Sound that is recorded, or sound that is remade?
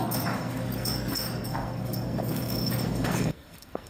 remade